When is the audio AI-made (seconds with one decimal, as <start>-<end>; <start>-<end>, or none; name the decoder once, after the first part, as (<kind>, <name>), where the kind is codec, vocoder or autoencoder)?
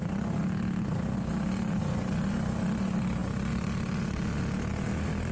none